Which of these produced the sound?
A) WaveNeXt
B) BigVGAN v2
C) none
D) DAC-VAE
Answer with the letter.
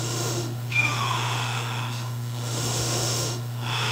D